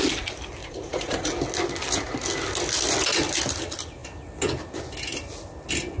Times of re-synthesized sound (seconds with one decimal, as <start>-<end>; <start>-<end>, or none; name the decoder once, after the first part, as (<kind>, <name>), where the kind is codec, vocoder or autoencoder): 0.6-1.3 (vocoder, Vocos)